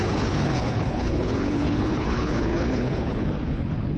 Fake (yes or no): yes